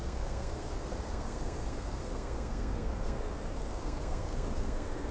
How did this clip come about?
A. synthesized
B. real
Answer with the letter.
A